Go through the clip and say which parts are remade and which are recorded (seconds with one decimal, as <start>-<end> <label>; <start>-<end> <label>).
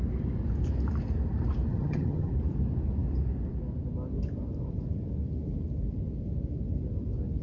0.0-1.7 recorded; 1.7-2.3 remade; 2.3-7.4 recorded